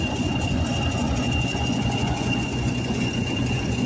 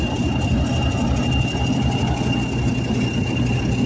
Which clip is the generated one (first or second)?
first